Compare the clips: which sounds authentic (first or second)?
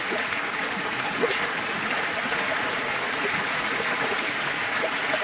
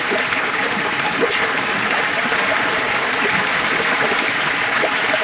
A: second